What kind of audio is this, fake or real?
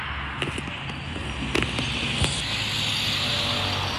real